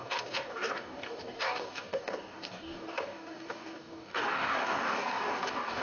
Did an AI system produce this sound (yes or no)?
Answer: yes